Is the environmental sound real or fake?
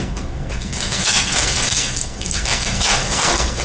fake